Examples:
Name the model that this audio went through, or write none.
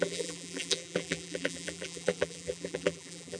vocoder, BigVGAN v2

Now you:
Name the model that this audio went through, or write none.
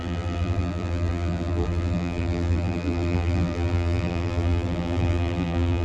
vocoder, BigVGAN v2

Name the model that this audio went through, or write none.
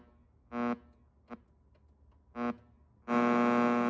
none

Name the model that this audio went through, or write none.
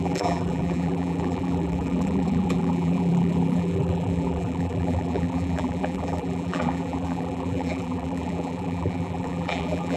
vocoder, BigVGAN v2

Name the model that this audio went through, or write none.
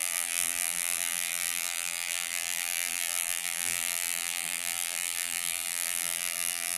vocoder, BigVGAN v2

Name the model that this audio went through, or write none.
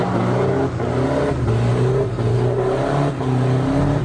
none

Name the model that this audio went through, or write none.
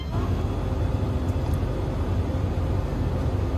none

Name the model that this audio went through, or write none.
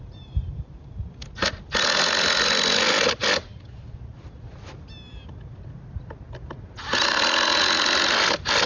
none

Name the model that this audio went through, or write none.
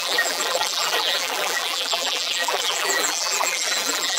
vocoder, BigVGAN v2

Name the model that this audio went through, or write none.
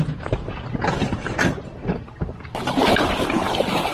vocoder, BigVGAN v2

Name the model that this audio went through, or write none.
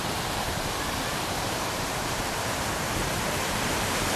vocoder, BigVGAN v2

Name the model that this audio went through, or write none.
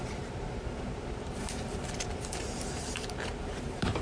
vocoder, BigVGAN v2